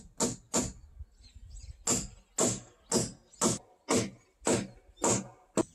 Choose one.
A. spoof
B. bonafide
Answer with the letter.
B